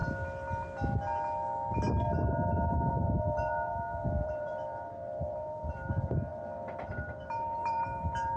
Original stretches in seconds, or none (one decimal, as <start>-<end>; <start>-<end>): 0.0-1.9